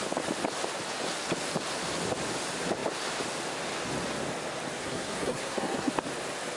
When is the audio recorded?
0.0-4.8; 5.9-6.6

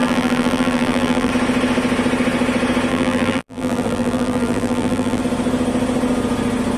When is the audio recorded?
1.3-2.9; 5.2-6.8

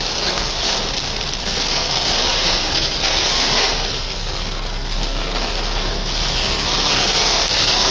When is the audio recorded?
0.8-1.4

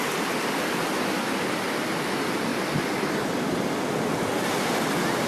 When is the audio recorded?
0.0-5.3

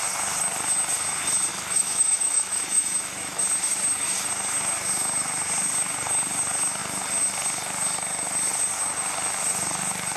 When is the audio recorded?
0.0-1.5; 3.4-10.2

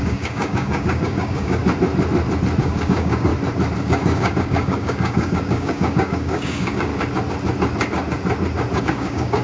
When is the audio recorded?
1.6-2.6; 3.3-3.8; 6.9-8.8